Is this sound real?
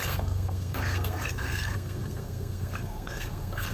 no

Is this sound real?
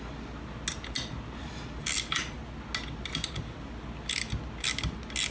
yes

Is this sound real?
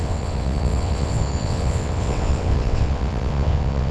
no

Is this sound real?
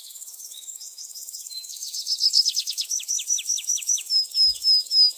no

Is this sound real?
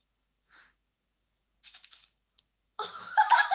no